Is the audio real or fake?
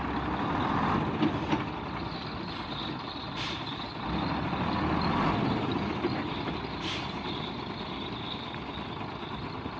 real